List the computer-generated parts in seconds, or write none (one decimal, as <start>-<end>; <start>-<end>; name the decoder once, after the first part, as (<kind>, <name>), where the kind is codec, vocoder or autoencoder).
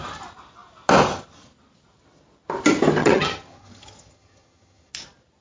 3.0-4.9 (vocoder, HiFi-GAN)